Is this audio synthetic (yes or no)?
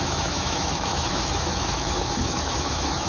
yes